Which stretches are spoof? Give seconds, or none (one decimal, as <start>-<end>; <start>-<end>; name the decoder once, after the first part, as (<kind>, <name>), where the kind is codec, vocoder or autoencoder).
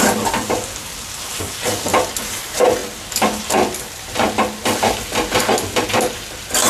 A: none